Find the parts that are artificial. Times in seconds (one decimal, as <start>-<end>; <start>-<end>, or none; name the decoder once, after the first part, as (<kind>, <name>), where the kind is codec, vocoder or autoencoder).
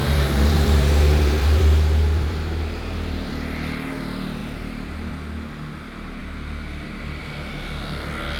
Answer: 0.0-3.3 (vocoder, BigVGAN v2); 4.4-5.1